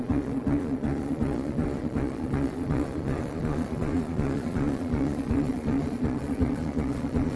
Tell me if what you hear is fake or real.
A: fake